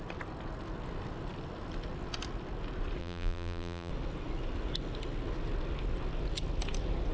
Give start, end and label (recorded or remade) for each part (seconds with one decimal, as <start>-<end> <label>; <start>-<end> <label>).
0.0-3.0 recorded; 3.0-3.9 remade; 3.9-7.1 recorded